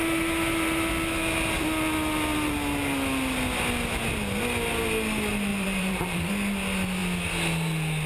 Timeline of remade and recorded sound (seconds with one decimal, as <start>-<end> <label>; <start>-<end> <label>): 0.0-0.9 remade; 0.9-5.5 recorded; 5.5-6.3 remade; 6.3-8.1 recorded